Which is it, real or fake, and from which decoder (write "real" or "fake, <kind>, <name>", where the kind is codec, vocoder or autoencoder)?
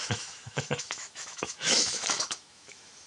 fake, autoencoder, DAC-VAE